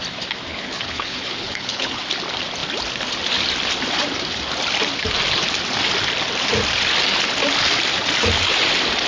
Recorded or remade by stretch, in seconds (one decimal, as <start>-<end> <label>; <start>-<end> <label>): 0.0-0.5 recorded; 0.5-2.0 remade; 2.0-9.1 recorded